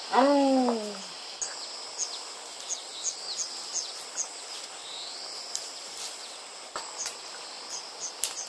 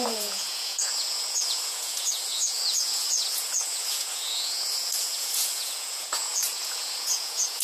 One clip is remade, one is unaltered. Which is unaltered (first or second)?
first